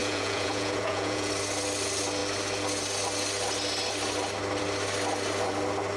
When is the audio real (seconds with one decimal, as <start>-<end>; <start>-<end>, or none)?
1.3-6.0